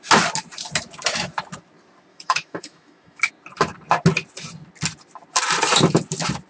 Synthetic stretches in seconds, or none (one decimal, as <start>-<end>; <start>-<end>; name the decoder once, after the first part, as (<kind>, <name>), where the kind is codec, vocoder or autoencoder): 2.1-3.3 (autoencoder, DAC-VAE)